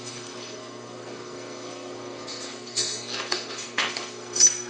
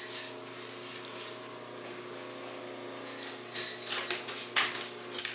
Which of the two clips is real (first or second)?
second